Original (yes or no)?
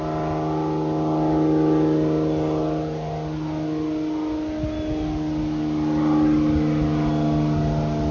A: yes